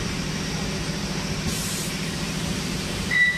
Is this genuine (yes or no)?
no